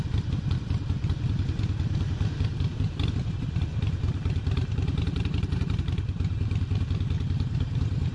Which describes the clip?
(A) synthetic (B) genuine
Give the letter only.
A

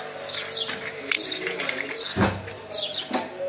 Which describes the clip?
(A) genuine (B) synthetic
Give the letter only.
B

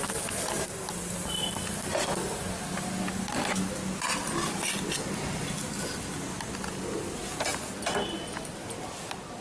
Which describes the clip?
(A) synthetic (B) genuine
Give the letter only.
B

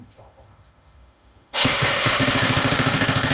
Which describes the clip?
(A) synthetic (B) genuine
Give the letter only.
A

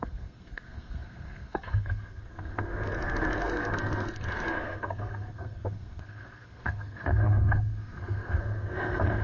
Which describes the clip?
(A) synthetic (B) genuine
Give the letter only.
A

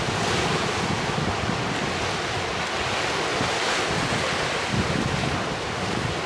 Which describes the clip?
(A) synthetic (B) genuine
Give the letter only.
B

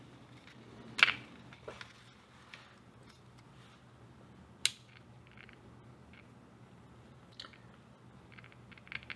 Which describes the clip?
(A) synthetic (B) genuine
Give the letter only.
B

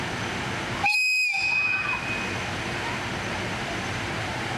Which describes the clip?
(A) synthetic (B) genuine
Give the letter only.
B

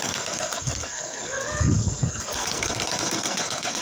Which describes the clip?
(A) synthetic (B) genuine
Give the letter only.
A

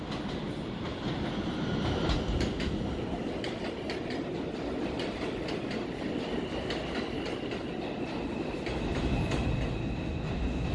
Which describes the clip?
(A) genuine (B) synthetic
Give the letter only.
A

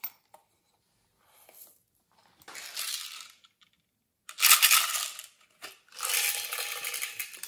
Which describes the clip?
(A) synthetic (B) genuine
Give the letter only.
B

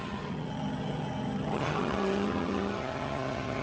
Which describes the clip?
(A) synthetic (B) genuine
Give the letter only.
A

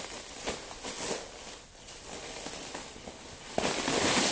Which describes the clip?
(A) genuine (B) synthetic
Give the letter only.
A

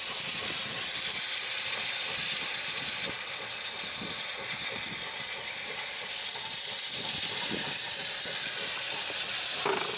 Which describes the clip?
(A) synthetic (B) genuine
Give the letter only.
B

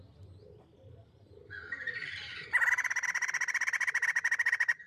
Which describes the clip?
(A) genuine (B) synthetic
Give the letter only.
A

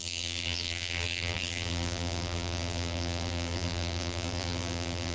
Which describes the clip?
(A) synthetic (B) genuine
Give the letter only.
A